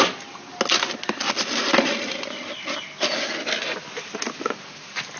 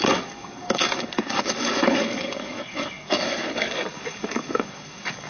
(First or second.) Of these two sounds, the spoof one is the second